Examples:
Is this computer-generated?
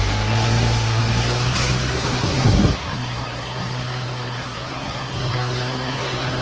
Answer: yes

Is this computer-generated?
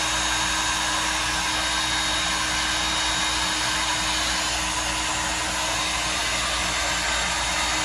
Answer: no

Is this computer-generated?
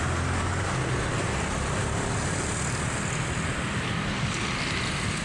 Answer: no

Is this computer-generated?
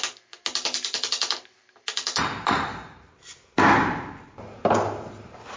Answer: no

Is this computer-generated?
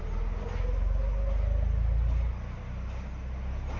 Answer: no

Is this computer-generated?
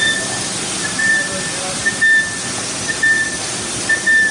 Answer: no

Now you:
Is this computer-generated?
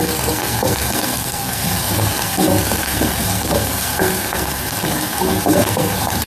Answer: yes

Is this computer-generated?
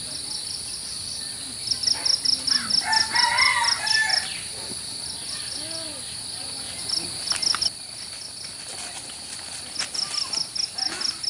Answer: no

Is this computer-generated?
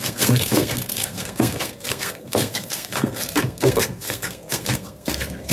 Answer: yes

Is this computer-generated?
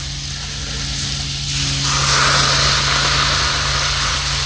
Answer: no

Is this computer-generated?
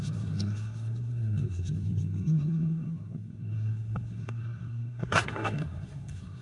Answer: yes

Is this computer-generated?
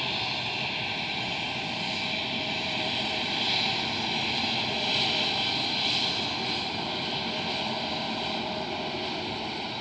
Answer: no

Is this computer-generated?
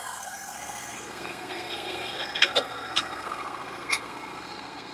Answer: yes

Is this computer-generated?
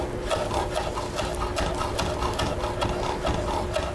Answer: no